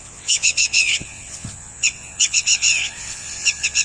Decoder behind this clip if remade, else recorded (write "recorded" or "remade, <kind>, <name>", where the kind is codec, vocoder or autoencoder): remade, vocoder, WaveNeXt